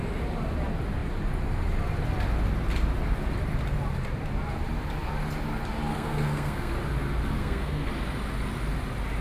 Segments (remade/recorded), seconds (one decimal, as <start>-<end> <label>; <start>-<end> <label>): 0.0-5.9 recorded; 5.9-6.7 remade; 6.7-7.4 recorded; 7.4-7.9 remade; 7.9-9.2 recorded